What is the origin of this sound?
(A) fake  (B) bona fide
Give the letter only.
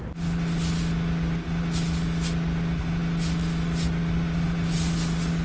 B